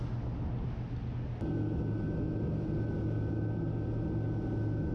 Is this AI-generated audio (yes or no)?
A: no